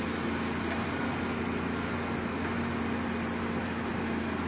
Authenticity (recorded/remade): recorded